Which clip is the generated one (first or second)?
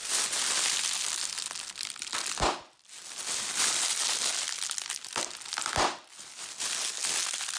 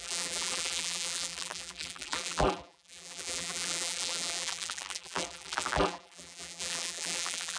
second